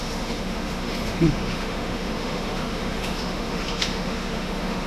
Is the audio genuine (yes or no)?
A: no